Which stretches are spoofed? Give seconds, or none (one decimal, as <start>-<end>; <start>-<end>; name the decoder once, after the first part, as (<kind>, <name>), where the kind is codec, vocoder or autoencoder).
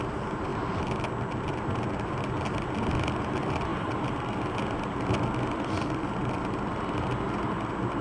none